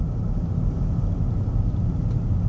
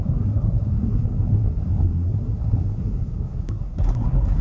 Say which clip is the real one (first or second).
first